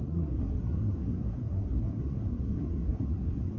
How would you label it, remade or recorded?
remade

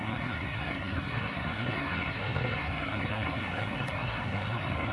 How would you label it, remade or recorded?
remade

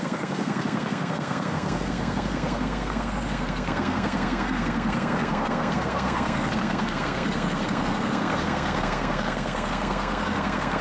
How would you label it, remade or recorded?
remade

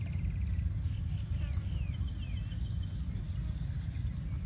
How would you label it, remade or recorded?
recorded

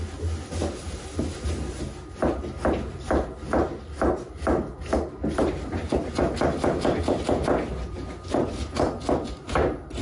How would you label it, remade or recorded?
recorded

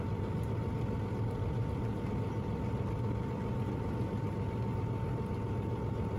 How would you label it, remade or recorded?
recorded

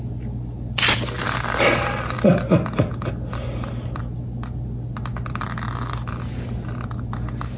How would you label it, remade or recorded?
recorded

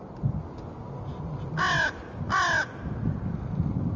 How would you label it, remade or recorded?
recorded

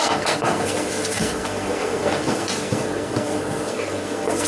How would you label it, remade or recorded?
remade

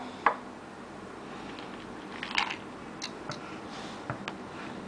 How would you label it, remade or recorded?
recorded